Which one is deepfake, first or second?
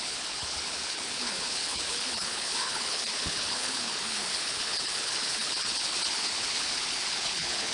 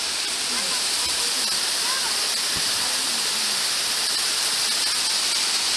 first